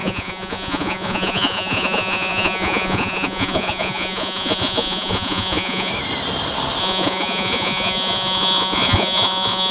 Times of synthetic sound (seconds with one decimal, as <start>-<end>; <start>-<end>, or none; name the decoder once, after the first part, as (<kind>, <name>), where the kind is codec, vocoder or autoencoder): 0.0-5.9 (vocoder, Vocos); 6.8-9.7